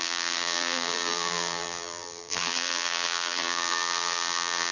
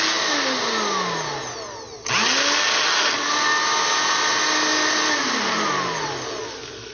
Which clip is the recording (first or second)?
second